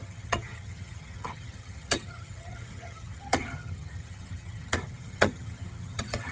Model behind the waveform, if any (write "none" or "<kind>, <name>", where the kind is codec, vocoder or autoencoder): vocoder, HiFi-GAN